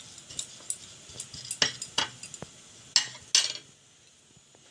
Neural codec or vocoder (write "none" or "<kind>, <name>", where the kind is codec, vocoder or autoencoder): none